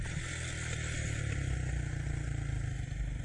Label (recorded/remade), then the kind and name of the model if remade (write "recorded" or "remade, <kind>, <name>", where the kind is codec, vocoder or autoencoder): recorded